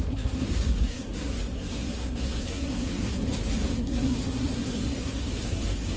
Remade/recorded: remade